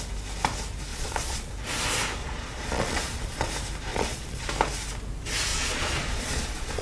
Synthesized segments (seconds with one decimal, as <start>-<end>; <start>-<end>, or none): 0.9-1.5; 2.2-3.5; 3.9-4.4; 5.5-6.8